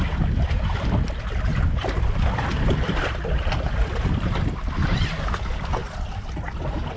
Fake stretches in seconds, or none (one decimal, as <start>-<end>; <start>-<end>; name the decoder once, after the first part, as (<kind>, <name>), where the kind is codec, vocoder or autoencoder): 1.5-5.0 (vocoder, BigVGAN v2)